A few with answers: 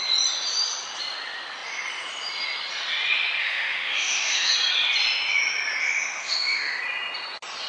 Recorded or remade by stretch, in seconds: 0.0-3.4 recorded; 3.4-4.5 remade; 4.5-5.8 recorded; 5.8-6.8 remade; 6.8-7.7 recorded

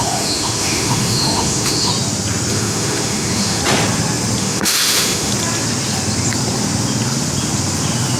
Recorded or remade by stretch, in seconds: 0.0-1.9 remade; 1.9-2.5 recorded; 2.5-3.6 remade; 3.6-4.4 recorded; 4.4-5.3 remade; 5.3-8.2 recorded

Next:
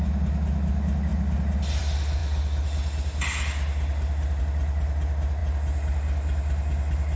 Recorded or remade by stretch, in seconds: 0.0-7.2 recorded

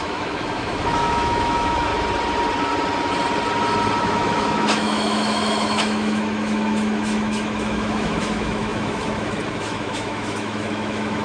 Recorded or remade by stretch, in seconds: 0.0-1.9 remade; 1.9-4.0 recorded; 4.0-11.2 remade

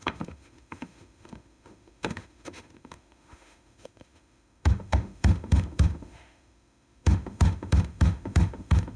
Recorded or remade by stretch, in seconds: 0.0-9.0 remade